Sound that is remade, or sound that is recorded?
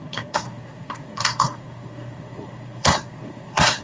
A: remade